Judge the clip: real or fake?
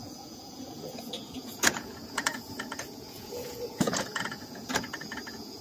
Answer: fake